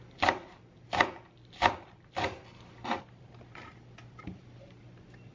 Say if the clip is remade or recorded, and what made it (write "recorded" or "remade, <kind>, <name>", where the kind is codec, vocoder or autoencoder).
recorded